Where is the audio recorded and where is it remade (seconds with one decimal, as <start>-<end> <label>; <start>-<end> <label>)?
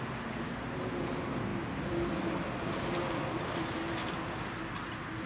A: 0.0-5.3 recorded